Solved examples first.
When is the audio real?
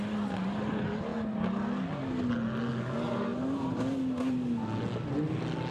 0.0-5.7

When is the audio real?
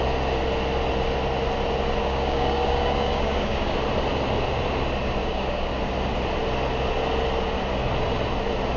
0.0-2.0; 3.7-5.2; 5.7-8.8